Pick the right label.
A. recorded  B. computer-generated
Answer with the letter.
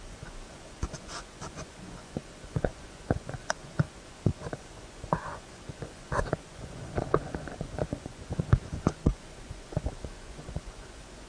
B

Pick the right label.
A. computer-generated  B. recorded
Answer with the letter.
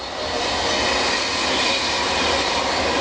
B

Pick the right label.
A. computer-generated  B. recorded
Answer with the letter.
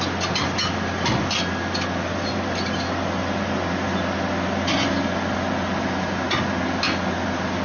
B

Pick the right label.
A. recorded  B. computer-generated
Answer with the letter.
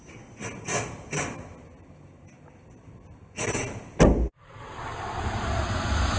A